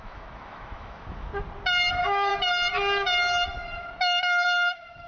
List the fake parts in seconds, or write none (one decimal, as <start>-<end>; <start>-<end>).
0.0-1.3; 1.9-2.3; 3.9-5.1